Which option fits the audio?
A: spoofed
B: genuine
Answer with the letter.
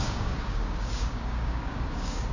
A